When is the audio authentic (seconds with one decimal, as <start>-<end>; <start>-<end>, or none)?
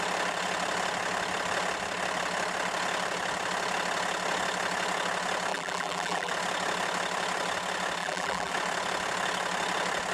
0.0-5.5; 6.3-8.0; 8.5-10.1